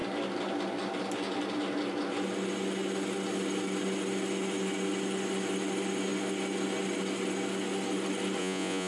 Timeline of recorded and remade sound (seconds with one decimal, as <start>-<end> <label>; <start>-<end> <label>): 0.0-8.4 recorded; 8.4-8.9 remade